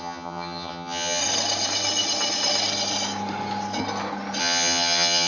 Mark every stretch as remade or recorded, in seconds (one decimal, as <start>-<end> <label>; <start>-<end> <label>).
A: 0.0-1.2 remade; 1.2-4.4 recorded; 4.4-5.3 remade